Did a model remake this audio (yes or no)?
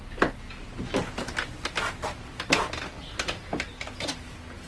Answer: no